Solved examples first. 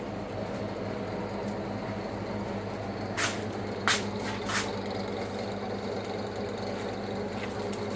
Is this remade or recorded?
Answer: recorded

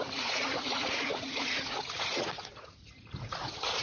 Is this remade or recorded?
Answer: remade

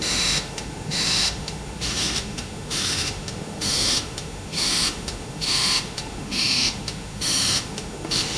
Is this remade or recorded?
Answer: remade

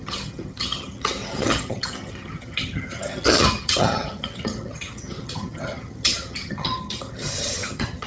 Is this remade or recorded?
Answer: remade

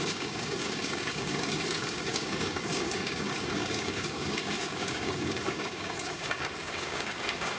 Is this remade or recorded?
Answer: remade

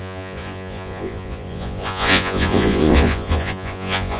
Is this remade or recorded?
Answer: remade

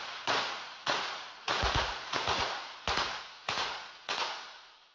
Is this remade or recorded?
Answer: remade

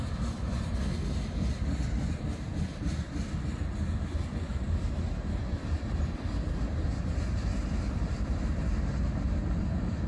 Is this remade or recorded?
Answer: recorded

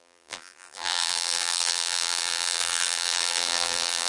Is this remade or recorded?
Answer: remade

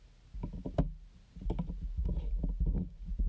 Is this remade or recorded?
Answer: recorded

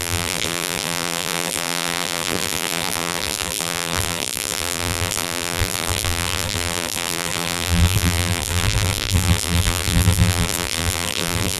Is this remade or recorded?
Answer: remade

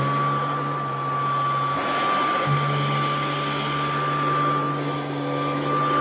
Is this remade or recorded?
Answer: recorded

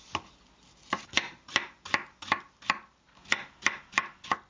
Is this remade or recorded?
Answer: recorded